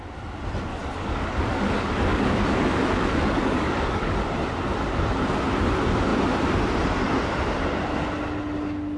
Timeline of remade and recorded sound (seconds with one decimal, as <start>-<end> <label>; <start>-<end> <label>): 0.0-0.7 recorded; 0.7-4.2 remade; 4.2-9.0 recorded